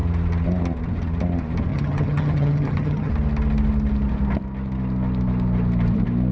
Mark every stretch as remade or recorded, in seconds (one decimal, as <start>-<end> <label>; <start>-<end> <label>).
0.0-1.7 recorded; 1.7-3.1 remade; 3.1-6.3 recorded